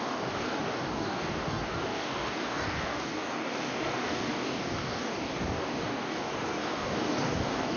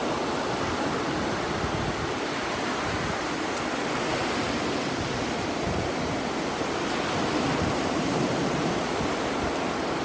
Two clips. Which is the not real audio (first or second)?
first